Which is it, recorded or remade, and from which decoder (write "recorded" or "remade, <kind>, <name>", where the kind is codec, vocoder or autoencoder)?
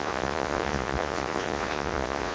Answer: remade, vocoder, Vocos